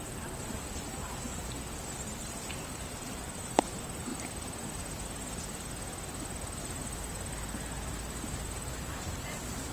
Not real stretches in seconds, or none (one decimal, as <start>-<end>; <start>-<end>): 0.0-1.4; 2.2-4.1; 6.6-9.7